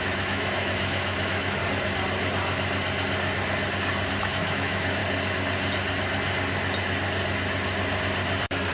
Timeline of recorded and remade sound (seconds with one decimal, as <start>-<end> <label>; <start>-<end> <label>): 0.0-1.6 remade; 1.6-4.2 recorded; 4.2-5.0 remade; 5.0-8.7 recorded